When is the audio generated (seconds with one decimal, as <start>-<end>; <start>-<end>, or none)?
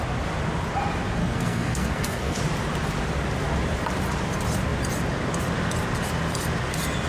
1.2-2.4